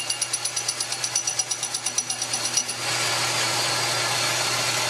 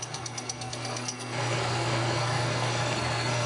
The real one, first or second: first